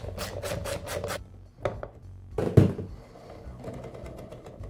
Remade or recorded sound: recorded